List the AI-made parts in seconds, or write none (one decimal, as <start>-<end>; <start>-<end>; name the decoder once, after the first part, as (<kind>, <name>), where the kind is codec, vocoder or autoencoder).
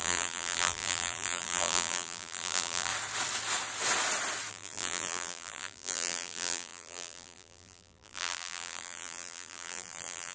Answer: 0.0-2.9 (vocoder, BigVGAN v2); 4.5-10.3